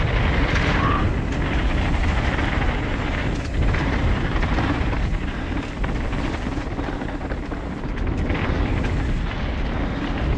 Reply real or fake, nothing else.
real